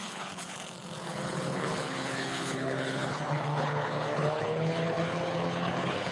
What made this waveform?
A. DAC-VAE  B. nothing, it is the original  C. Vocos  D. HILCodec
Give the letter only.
D